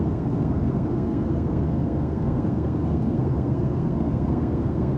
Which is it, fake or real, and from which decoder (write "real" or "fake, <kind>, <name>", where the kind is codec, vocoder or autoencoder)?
fake, codec, SNAC